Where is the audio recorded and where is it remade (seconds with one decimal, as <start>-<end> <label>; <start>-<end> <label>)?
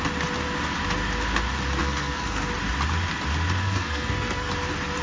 0.0-1.8 recorded; 1.8-2.5 remade; 2.5-3.6 recorded; 3.6-4.5 remade; 4.5-5.0 recorded